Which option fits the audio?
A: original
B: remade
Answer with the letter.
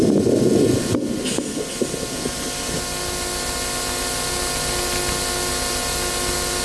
A